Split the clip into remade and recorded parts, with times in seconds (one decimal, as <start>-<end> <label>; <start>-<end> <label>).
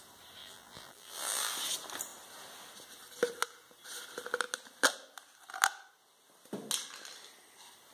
0.0-0.4 recorded; 0.4-1.5 remade; 1.5-7.9 recorded